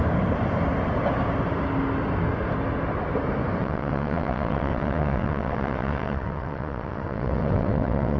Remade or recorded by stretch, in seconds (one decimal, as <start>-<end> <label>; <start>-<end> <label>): 0.0-3.6 recorded; 3.6-8.2 remade